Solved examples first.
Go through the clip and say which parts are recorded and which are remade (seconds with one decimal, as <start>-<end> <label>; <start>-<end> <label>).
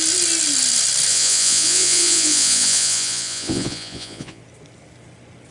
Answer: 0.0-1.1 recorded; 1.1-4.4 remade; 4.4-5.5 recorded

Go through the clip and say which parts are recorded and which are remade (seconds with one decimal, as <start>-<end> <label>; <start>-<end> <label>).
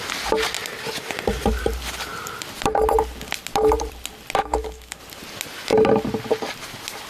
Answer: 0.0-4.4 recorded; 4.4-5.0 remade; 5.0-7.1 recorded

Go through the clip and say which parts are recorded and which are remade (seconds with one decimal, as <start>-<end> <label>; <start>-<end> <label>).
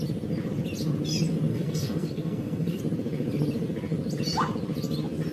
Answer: 0.0-1.5 recorded; 1.5-2.8 remade; 2.8-5.3 recorded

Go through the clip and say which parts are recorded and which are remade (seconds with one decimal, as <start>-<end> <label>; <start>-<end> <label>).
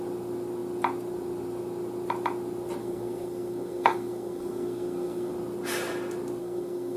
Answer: 0.0-2.8 recorded; 2.8-5.3 remade; 5.3-6.4 recorded; 6.4-7.0 remade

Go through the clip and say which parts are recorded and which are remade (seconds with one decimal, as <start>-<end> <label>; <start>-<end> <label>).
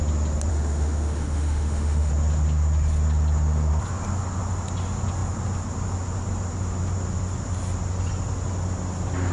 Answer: 0.0-0.5 recorded; 0.5-2.1 remade; 2.1-9.3 recorded